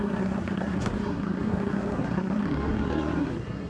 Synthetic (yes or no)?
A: yes